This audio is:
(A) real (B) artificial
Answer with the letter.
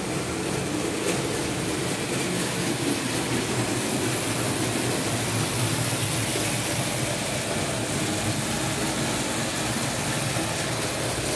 A